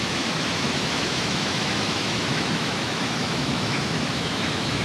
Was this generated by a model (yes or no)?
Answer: yes